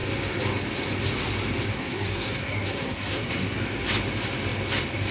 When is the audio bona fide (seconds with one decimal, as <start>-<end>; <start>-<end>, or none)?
0.0-1.7; 3.6-5.1